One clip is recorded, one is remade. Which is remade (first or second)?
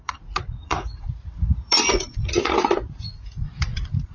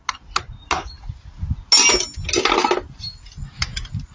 first